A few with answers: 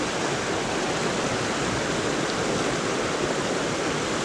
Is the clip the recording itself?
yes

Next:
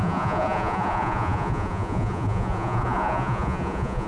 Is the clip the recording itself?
no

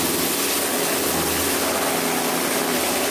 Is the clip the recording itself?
yes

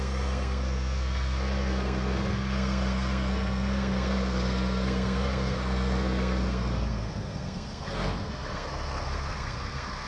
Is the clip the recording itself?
no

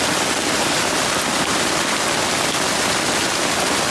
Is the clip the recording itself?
yes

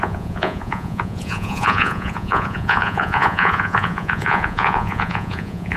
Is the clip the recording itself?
no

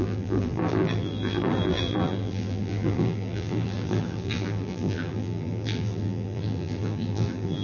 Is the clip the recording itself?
no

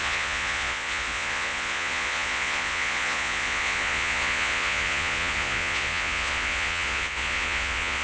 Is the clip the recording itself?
no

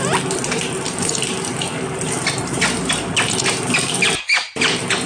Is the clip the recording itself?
yes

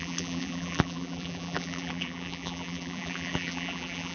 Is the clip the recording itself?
no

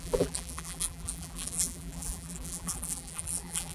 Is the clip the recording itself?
no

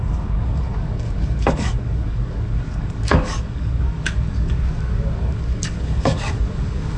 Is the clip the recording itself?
no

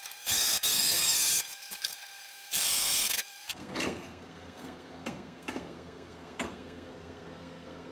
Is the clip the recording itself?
no